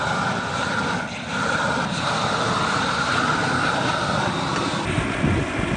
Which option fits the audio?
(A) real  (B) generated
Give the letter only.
B